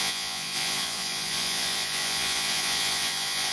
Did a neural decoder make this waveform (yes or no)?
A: yes